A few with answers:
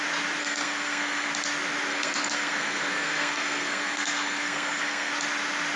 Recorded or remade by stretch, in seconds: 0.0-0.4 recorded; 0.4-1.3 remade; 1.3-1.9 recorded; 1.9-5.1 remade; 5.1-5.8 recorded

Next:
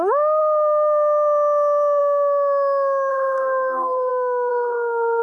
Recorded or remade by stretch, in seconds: 0.0-3.1 recorded; 3.1-4.1 remade; 4.1-4.5 recorded; 4.5-5.2 remade

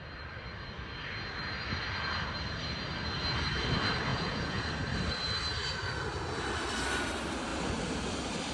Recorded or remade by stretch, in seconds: 0.0-4.1 recorded; 4.1-4.7 remade; 4.7-8.5 recorded

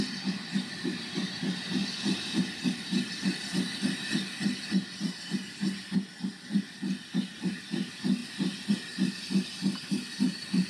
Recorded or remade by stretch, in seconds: 0.0-10.7 recorded

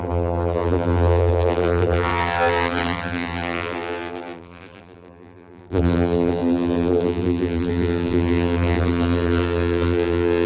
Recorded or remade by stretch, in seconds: 0.0-10.5 remade